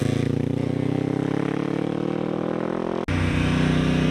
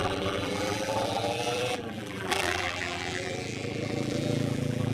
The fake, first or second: second